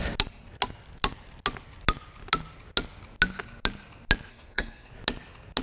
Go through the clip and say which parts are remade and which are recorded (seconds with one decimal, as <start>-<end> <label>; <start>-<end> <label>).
0.0-4.3 recorded; 4.3-4.9 remade; 4.9-5.6 recorded